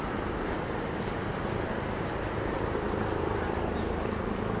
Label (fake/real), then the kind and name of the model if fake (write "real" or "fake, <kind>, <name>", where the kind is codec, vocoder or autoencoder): real